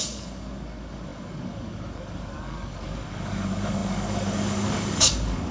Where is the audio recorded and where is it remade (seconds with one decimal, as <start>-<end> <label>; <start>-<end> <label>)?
0.0-5.5 remade